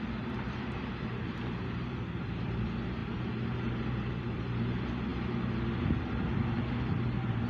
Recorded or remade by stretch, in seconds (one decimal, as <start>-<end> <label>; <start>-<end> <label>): 0.0-3.0 remade; 3.0-3.7 recorded; 3.7-5.1 remade; 5.1-5.9 recorded; 5.9-7.5 remade

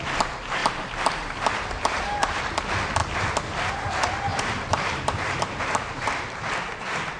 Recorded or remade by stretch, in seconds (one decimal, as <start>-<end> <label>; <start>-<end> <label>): 0.0-0.6 recorded; 0.6-2.4 remade; 2.4-4.3 recorded; 4.3-7.2 remade

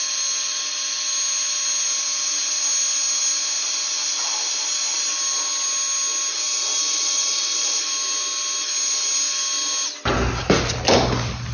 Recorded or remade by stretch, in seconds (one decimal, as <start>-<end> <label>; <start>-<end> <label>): 0.0-6.8 recorded; 6.8-7.8 remade; 7.8-11.5 recorded

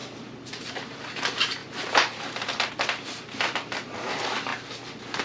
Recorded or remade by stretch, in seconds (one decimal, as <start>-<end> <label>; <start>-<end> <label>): 0.0-4.5 remade; 4.5-5.2 recorded